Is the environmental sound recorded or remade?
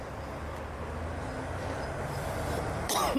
recorded